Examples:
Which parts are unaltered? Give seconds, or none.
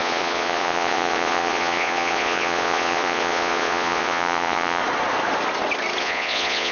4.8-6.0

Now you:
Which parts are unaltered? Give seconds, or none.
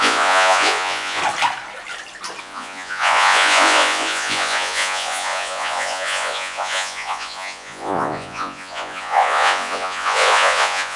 1.2-2.4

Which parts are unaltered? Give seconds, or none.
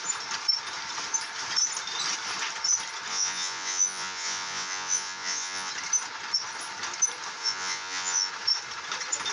0.0-3.1; 5.7-7.4; 8.3-9.3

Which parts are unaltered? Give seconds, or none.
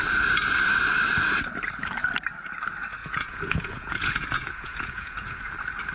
0.0-3.0; 5.5-5.9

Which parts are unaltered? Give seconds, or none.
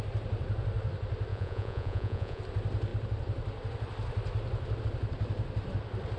0.0-1.3; 2.4-6.2